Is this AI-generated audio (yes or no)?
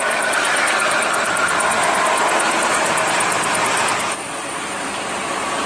no